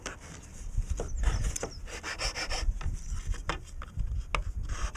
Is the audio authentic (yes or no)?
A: yes